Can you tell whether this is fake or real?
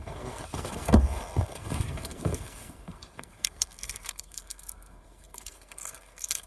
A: fake